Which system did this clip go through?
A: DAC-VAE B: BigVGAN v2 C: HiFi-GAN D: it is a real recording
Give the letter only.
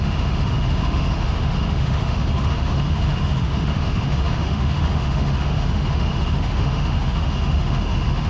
A